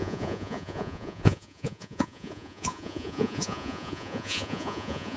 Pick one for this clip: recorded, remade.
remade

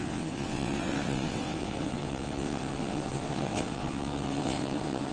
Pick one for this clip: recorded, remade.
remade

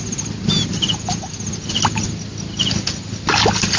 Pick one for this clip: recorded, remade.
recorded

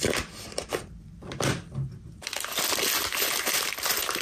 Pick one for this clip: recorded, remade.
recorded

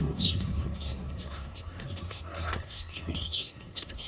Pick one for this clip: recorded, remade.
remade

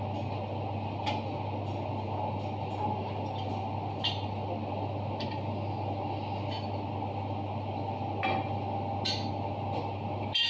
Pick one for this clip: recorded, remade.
recorded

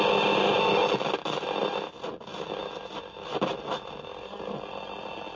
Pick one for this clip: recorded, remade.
recorded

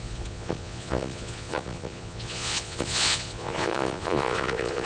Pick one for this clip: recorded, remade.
remade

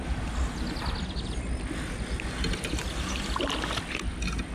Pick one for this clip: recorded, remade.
recorded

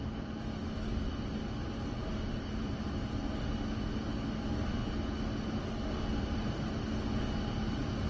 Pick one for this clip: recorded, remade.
recorded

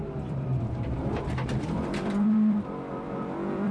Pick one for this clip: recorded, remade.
remade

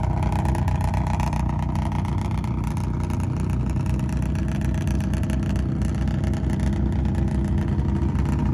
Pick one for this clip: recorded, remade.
recorded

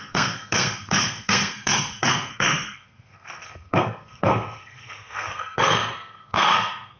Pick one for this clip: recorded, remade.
remade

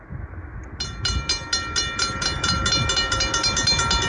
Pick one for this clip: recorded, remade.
recorded